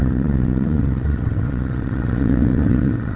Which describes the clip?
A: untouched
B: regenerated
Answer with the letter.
B